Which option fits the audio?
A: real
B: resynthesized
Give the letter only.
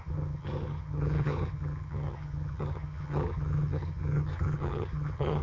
B